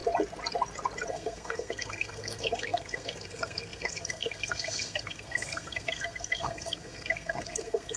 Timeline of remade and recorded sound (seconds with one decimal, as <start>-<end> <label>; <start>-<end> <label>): 0.0-1.1 recorded; 1.1-8.0 remade